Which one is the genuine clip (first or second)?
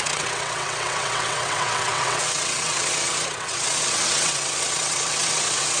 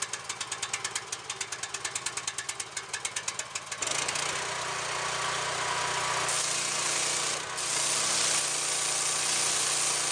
second